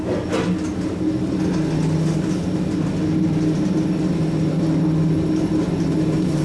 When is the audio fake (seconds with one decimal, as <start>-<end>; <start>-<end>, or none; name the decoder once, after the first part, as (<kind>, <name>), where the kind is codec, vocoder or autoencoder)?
none